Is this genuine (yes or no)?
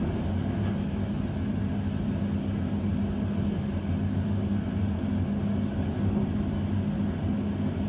yes